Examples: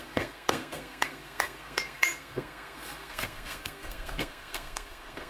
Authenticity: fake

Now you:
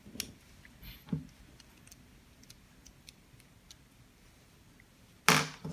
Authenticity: real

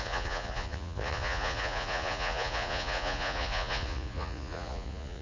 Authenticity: fake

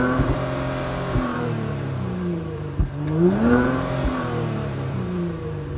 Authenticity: fake